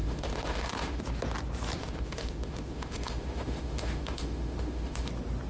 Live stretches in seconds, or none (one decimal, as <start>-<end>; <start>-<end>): 1.0-1.8; 5.1-5.5